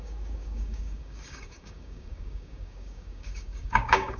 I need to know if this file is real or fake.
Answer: fake